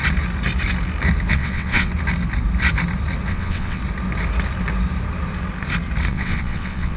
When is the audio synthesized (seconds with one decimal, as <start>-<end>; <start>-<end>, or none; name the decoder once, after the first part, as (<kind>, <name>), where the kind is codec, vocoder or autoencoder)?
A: 1.3-1.9 (vocoder, WaveNeXt); 3.3-3.8; 6.1-7.0